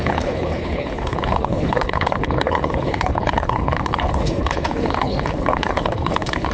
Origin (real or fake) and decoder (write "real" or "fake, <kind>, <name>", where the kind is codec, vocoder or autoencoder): fake, codec, HILCodec